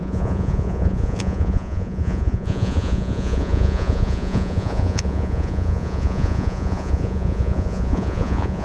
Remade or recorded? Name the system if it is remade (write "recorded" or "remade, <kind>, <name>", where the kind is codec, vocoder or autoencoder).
remade, vocoder, Vocos